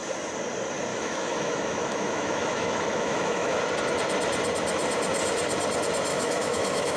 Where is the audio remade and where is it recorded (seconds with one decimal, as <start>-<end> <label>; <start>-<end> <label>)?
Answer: 0.0-0.9 recorded; 0.9-3.6 remade; 3.6-6.1 recorded; 6.1-7.0 remade